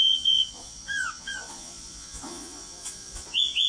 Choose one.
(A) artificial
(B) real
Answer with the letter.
A